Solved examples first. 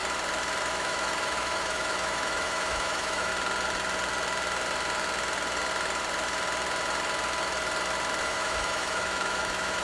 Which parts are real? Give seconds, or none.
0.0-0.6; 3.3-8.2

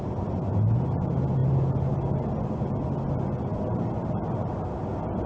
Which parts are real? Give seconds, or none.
0.0-5.3